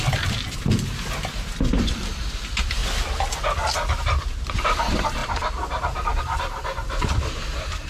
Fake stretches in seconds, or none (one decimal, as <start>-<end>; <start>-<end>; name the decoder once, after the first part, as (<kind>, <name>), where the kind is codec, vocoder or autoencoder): 1.7-2.8 (vocoder, BigVGAN v2); 4.1-7.9